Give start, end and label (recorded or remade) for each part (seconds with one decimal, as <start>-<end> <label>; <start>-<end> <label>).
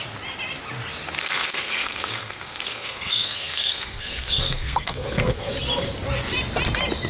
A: 0.0-1.2 recorded; 1.2-5.5 remade; 5.5-7.1 recorded